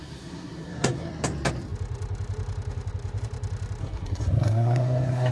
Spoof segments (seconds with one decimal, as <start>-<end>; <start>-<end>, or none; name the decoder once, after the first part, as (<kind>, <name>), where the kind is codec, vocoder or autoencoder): 0.0-1.1 (codec, SNAC); 3.8-5.3